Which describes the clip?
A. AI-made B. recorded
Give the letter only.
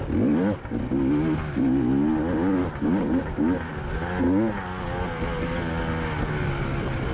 B